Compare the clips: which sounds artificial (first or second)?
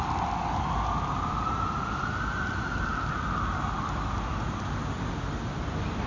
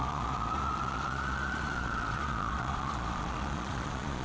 second